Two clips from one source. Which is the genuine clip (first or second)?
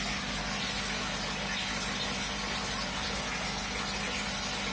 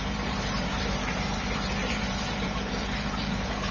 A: first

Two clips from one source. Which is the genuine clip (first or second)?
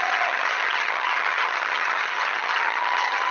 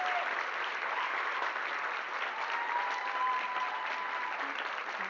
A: second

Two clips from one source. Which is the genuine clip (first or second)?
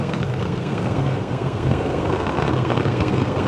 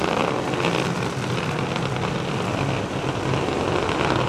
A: second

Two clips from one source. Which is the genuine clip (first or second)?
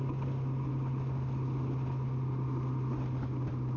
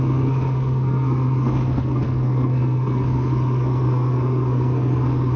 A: first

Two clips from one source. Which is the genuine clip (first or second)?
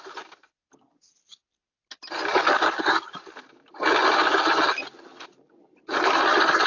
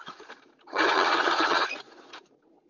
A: first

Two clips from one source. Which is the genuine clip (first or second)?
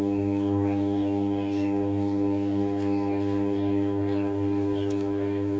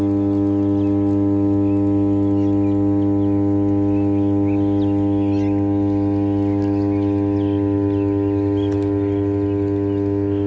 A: second